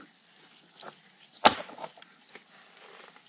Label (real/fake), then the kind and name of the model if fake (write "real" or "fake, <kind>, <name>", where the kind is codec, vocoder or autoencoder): real